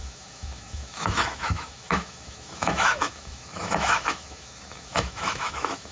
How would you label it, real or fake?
fake